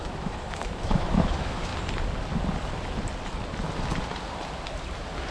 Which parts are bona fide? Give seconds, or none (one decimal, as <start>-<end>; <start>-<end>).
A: 1.7-5.3